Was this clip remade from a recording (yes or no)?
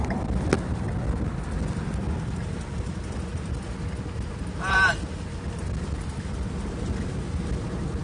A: no